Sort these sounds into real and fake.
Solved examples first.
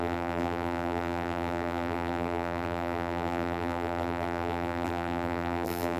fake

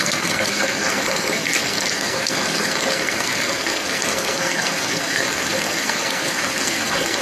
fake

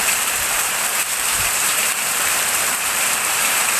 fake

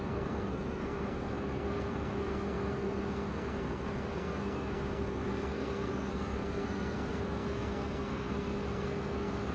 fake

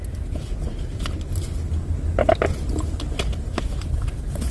real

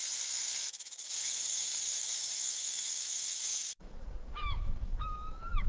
fake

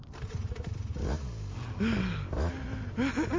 real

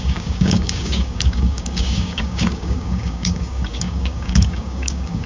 fake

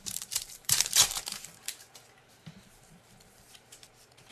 fake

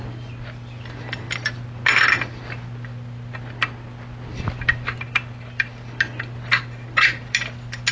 real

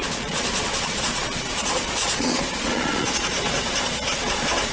fake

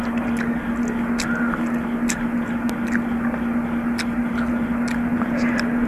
real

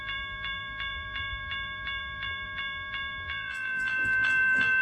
fake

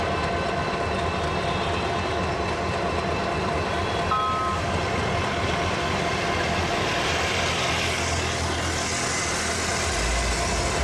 real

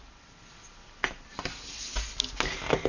real